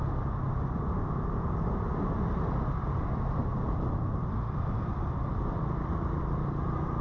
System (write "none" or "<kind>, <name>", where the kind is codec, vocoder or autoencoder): none